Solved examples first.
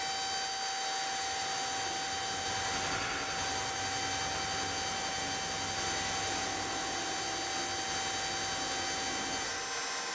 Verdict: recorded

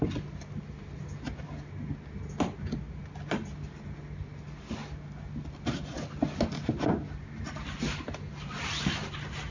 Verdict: recorded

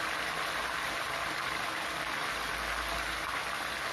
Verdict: recorded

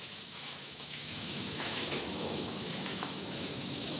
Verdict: remade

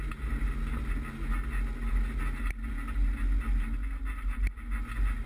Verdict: recorded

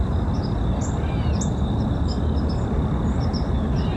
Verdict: recorded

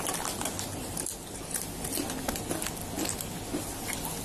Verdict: recorded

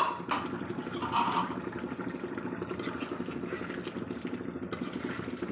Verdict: recorded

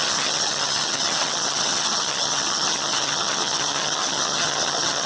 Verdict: remade